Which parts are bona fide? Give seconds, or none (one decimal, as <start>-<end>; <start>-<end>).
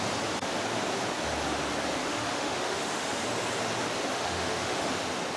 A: 0.0-2.0; 3.2-4.1; 4.9-5.4